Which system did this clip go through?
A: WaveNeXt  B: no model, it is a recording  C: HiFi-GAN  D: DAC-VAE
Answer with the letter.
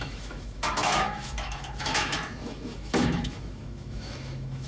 D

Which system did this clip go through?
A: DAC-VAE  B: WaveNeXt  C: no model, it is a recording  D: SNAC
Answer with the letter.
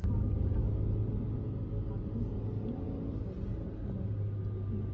C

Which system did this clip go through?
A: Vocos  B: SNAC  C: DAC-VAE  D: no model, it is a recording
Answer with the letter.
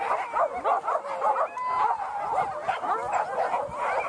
D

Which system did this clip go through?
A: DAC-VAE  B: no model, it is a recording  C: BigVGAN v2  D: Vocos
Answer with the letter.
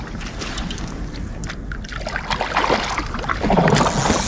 B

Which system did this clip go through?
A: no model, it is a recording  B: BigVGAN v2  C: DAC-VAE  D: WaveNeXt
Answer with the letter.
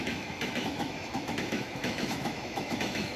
C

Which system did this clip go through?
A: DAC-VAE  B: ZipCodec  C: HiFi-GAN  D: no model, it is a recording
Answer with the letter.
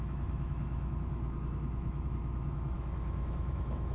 A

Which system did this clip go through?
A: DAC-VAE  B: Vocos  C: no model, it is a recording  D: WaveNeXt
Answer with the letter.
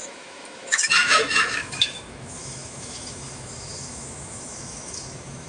A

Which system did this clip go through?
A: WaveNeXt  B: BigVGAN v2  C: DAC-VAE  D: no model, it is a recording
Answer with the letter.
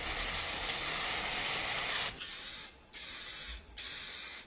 D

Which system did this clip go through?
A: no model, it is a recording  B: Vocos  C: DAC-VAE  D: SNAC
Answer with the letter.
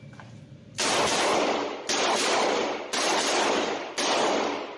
A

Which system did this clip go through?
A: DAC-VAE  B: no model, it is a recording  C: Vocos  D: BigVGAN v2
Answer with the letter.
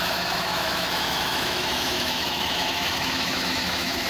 A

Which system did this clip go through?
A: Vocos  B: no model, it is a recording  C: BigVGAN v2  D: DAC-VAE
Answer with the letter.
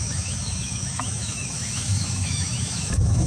D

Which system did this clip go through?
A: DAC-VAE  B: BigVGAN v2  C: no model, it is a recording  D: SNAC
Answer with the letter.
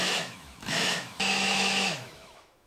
A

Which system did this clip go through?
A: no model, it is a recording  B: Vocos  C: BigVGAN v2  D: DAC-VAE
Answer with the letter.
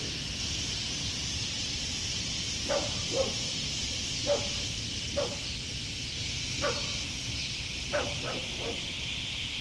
A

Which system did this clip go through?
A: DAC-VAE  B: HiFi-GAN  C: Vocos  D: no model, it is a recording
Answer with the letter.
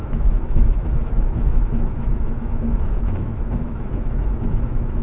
A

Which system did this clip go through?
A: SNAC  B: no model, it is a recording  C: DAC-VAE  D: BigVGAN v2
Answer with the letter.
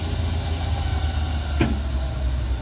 B